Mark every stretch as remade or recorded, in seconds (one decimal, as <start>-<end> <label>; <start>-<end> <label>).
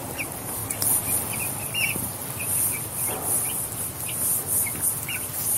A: 0.0-0.6 remade; 0.6-1.6 recorded; 1.6-2.2 remade; 2.2-5.6 recorded